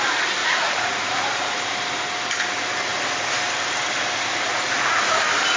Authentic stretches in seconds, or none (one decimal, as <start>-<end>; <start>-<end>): 0.0-0.4; 1.3-4.5; 5.0-5.6